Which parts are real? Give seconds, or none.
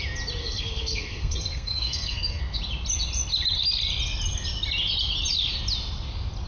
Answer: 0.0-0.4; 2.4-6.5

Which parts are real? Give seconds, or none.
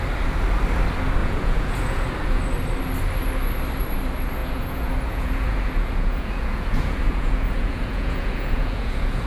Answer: 0.0-1.2; 2.4-4.4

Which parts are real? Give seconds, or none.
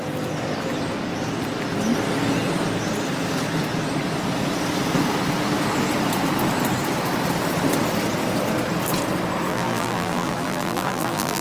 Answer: 0.0-9.5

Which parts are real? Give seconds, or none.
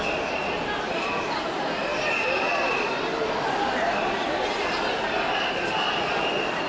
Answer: 0.0-6.7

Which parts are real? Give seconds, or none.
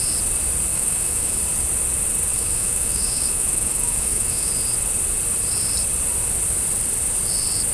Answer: 0.0-0.7; 1.4-2.3; 4.5-7.7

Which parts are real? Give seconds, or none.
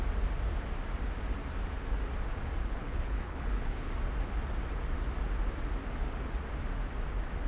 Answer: 0.0-2.6; 3.9-7.5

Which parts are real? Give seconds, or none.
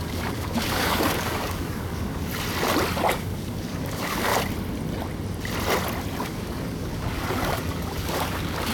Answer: 2.3-3.1; 4.3-6.2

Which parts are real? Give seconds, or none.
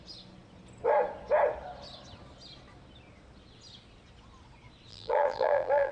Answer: 0.0-4.9